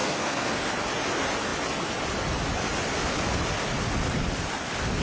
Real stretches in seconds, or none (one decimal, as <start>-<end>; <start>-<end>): 0.7-5.0